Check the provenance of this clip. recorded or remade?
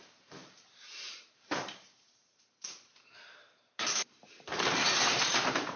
remade